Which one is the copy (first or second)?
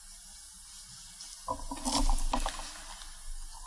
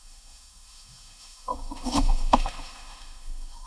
second